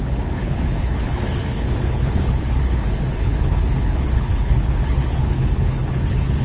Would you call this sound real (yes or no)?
no